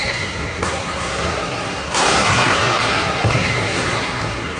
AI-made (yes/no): yes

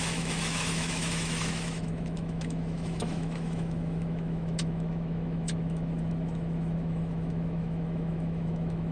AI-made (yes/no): yes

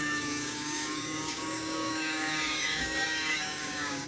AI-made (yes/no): yes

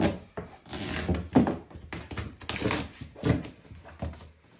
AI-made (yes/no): no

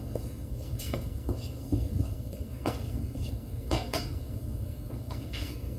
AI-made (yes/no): yes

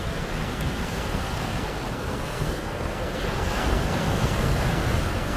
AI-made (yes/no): yes